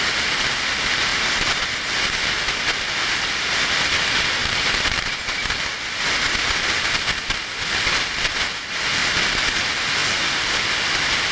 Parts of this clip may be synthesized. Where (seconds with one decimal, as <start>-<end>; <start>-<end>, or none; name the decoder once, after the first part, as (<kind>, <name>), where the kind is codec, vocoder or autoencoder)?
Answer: 4.4-5.2 (vocoder, BigVGAN v2)

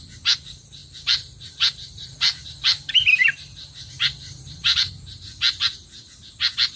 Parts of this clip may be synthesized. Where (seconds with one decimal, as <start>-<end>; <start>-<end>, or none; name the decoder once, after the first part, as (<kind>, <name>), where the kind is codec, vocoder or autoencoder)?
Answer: 0.8-4.9 (vocoder, BigVGAN v2)

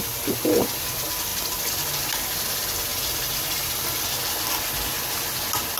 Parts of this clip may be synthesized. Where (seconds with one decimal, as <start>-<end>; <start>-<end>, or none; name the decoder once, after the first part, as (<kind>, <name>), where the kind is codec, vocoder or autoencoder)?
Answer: 2.9-4.2 (vocoder, BigVGAN v2)

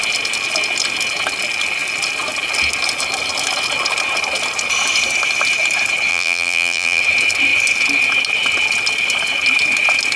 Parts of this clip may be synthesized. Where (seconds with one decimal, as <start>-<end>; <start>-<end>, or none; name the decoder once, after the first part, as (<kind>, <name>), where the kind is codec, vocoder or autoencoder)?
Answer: 6.1-7.0 (vocoder, BigVGAN v2)

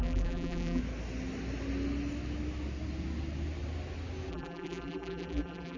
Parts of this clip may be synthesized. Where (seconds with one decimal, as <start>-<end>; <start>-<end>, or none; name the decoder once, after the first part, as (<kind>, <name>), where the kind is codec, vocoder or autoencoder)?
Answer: 0.0-0.8 (vocoder, BigVGAN v2); 4.3-5.8

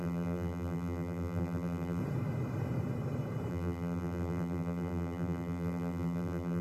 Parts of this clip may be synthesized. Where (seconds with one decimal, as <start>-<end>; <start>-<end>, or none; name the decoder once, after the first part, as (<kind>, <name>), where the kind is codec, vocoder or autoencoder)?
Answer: 0.0-2.0 (vocoder, BigVGAN v2); 3.5-6.6